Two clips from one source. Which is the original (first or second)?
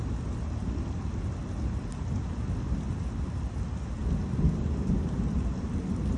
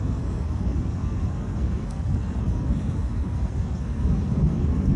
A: first